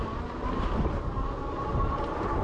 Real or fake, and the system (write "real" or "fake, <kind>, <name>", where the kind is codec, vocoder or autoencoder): real